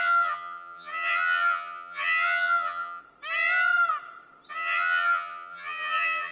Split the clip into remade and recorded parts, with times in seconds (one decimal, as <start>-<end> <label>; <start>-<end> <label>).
0.0-3.0 remade; 3.0-4.5 recorded; 4.5-6.3 remade